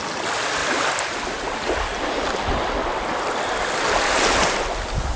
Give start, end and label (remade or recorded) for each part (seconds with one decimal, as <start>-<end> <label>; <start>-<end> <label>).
0.0-5.2 recorded